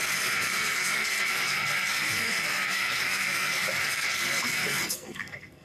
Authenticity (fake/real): fake